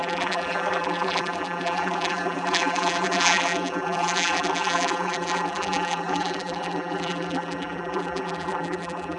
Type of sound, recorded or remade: remade